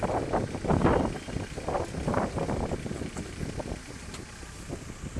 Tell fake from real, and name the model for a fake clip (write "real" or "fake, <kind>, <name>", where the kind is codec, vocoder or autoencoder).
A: real